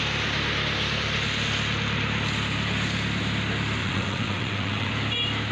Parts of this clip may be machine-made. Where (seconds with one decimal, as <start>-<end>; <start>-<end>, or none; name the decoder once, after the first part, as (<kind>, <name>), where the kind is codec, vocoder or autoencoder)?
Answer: 3.8-4.9 (vocoder, WaveNeXt)